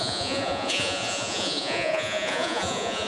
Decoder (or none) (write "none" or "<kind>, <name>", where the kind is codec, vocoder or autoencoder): vocoder, Vocos